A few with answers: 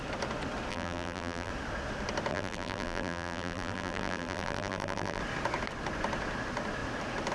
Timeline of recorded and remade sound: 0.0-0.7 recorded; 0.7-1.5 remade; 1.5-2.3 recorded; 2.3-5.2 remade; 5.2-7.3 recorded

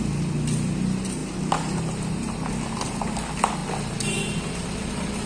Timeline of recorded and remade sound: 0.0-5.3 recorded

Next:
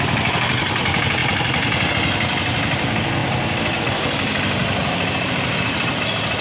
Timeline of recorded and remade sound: 0.0-1.2 recorded; 1.2-1.9 remade; 1.9-4.8 recorded; 4.8-6.0 remade; 6.0-6.4 recorded

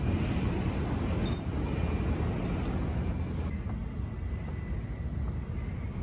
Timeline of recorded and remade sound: 0.0-6.0 recorded